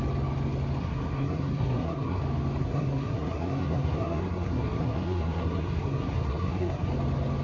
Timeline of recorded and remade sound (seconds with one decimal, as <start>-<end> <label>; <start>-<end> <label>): 0.0-0.8 recorded; 0.8-2.2 remade; 2.2-2.6 recorded; 2.6-6.9 remade; 6.9-7.4 recorded